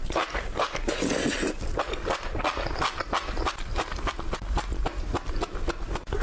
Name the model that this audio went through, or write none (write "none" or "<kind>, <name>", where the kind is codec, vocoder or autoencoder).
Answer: none